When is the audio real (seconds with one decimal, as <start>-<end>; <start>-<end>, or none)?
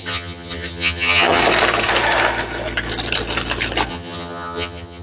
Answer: 1.4-3.9